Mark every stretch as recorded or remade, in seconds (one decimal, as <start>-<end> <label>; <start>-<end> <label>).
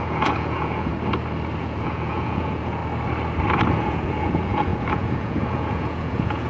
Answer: 0.0-0.9 remade; 0.9-1.6 recorded; 1.6-2.8 remade; 2.8-3.7 recorded; 3.7-6.5 remade